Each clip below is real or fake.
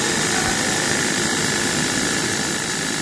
real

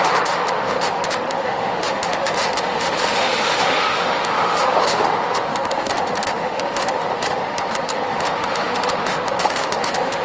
fake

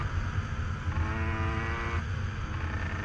real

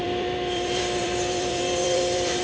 fake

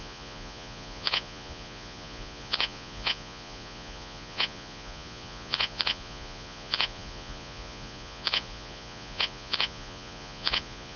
fake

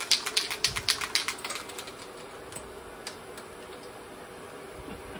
real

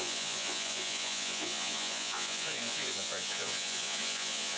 fake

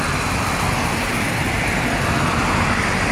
real